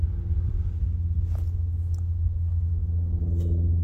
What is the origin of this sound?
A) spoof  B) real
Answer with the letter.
B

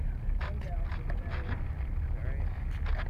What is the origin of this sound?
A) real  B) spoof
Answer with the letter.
A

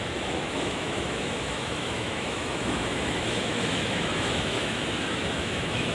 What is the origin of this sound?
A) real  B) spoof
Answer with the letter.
B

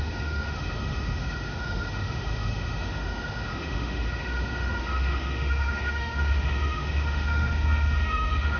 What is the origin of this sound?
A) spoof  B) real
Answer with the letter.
A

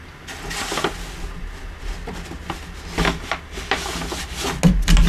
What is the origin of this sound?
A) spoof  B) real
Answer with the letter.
B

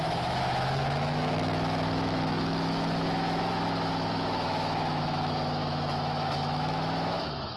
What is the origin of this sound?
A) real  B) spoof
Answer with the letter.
B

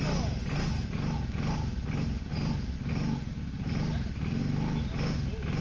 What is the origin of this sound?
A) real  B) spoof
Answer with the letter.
A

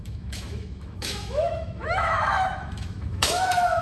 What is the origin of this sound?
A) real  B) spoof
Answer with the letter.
B